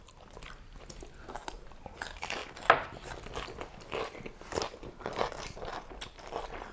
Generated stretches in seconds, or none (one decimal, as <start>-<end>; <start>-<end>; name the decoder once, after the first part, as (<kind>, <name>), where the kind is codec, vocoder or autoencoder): none